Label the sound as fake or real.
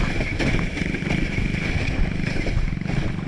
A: real